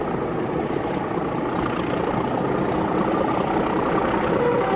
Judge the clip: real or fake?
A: real